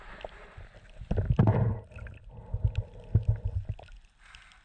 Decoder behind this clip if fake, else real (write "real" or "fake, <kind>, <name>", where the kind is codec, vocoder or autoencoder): real